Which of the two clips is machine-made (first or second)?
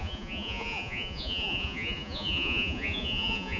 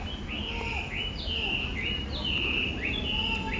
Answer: first